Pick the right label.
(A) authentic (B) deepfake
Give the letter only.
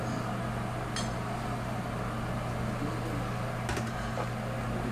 A